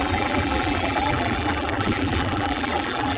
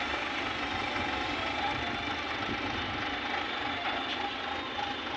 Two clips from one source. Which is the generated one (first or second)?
first